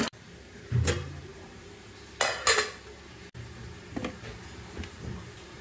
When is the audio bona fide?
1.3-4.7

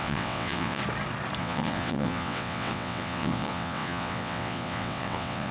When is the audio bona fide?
0.8-1.4

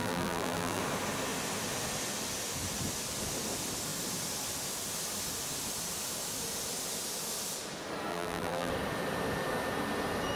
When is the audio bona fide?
0.8-8.1; 8.7-10.3

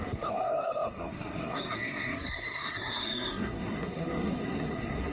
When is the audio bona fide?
none

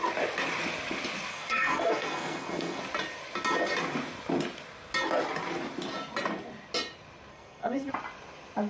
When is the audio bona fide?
0.0-1.3; 2.8-7.3; 7.9-8.7

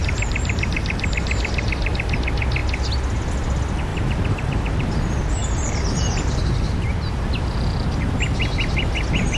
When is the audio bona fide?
1.9-3.9; 5.0-5.4; 6.5-9.4

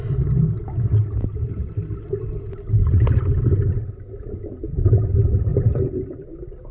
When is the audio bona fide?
0.0-6.7

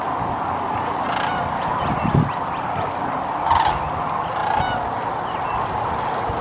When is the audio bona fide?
0.0-6.4